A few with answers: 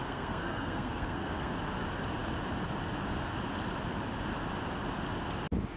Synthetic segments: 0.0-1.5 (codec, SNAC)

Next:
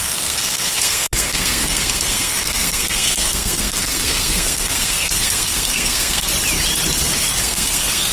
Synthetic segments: 0.0-6.3 (codec, SNAC); 7.4-8.1